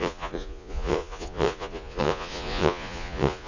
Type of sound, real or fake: fake